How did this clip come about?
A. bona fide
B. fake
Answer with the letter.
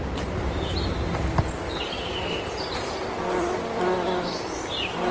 B